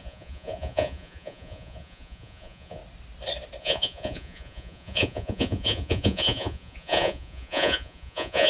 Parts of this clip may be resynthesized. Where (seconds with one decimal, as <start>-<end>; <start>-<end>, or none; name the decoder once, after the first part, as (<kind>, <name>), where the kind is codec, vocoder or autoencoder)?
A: 0.0-2.8 (vocoder, Vocos); 3.6-8.5